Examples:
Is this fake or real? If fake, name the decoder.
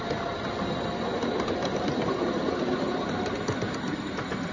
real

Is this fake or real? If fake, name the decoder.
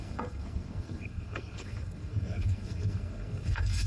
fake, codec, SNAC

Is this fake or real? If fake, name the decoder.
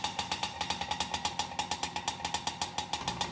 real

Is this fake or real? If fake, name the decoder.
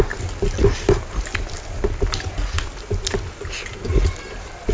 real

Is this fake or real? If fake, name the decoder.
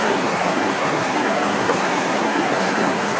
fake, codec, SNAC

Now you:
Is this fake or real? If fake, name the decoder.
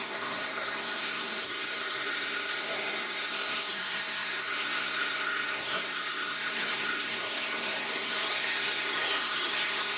fake, codec, SNAC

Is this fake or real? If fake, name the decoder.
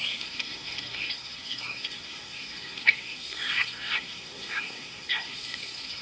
fake, codec, SNAC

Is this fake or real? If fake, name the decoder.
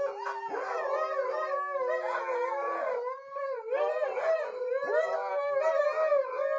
real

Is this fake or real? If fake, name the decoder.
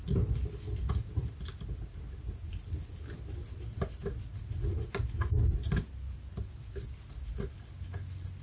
real